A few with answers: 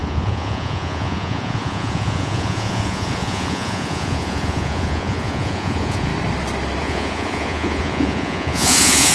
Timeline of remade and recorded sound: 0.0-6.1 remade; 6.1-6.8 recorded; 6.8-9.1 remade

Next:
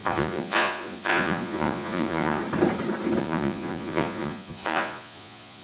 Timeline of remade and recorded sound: 0.0-2.4 remade; 2.4-3.2 recorded; 3.2-5.6 remade

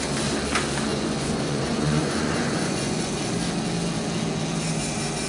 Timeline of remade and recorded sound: 0.0-0.9 recorded; 0.9-3.1 remade; 3.1-5.3 recorded

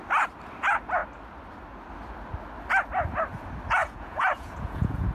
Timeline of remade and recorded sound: 0.0-3.8 recorded; 3.8-5.1 remade